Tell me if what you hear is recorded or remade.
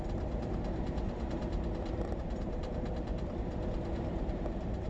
remade